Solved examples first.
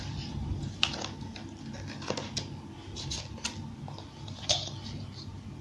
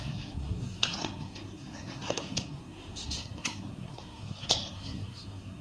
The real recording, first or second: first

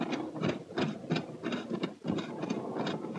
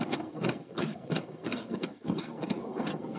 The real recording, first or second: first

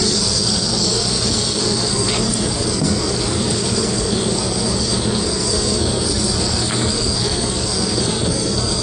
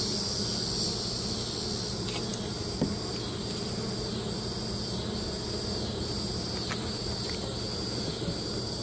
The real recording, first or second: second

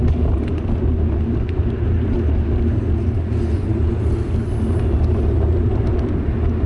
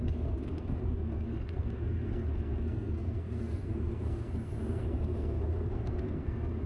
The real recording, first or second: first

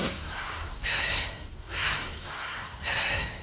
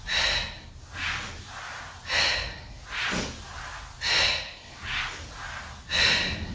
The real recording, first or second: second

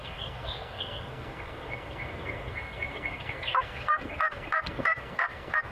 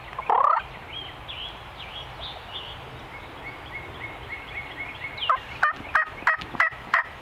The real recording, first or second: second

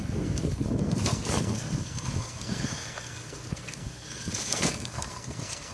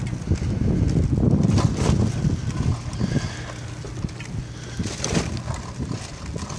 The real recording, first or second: second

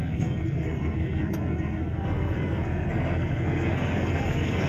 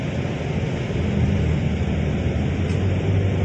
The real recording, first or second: second